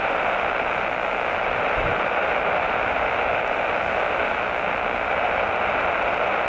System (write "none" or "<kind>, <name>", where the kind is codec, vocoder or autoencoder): none